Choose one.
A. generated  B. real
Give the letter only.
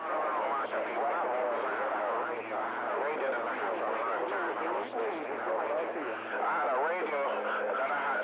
B